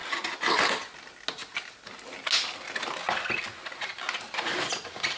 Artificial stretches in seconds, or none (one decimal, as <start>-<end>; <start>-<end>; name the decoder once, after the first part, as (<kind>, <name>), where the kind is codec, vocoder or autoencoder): none